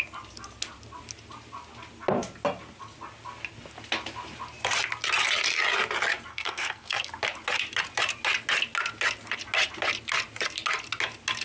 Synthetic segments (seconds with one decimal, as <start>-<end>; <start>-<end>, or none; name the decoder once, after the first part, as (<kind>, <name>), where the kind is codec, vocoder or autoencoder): 6.3-7.1 (codec, SNAC)